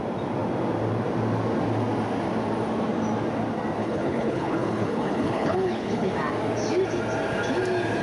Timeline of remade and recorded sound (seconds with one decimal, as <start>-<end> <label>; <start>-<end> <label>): 0.0-3.8 recorded; 3.8-6.1 remade; 6.1-8.0 recorded